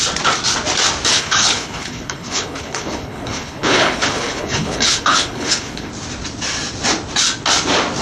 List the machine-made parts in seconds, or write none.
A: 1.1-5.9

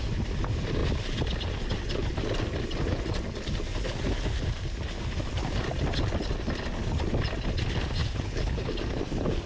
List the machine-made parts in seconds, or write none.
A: 8.0-8.7

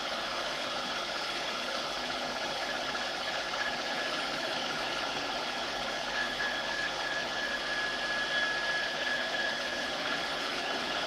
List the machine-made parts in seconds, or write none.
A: 0.0-7.6; 8.8-11.1

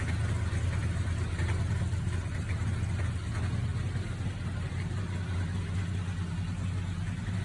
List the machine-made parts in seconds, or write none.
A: none

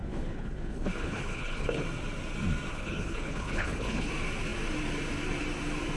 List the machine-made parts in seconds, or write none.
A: 0.0-1.8; 2.7-4.1

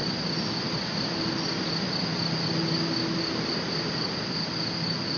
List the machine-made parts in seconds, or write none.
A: none